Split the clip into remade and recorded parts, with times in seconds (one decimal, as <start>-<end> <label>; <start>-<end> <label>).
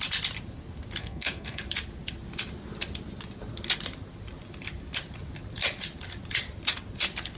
0.0-1.0 recorded; 1.0-1.6 remade; 1.6-7.4 recorded